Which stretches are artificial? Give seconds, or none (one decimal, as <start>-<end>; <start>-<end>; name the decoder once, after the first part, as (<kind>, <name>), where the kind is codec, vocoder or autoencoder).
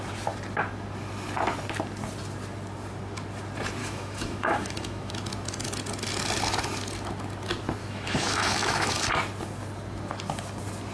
3.8-5.1 (autoencoder, DAC-VAE); 7.8-9.0